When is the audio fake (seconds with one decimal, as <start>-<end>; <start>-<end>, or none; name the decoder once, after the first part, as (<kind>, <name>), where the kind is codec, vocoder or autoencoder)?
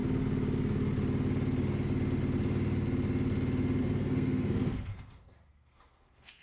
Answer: 3.8-6.4 (codec, SNAC)